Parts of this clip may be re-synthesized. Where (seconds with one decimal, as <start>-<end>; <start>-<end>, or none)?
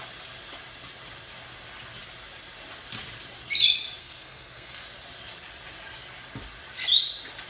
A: 4.0-4.8